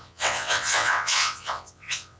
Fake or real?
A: fake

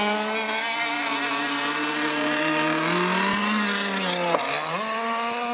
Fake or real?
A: real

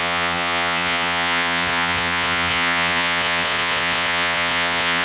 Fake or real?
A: fake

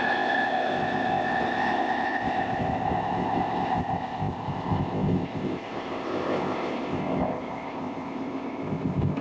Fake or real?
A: fake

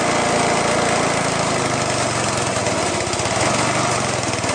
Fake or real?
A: real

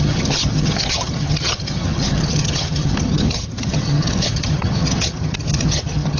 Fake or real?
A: fake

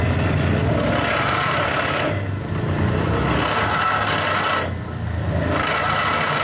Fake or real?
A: real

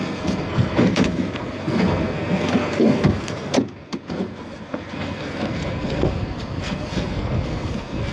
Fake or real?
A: fake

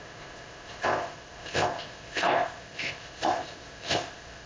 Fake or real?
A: fake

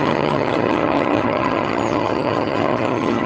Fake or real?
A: fake